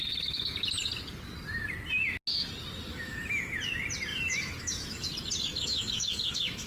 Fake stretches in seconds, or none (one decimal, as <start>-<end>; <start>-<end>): 2.9-3.5; 4.1-5.1; 5.5-6.7

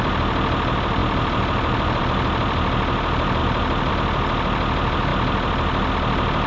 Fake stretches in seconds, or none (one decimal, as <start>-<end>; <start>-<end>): none

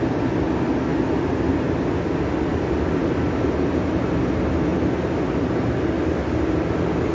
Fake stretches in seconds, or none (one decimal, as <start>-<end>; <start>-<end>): none

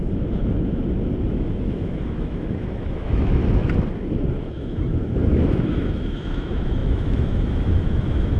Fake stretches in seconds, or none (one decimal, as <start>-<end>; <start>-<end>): 0.0-0.8; 1.3-3.4; 4.4-8.4

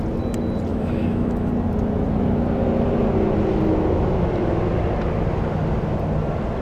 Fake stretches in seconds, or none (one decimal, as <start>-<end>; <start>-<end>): 0.7-1.5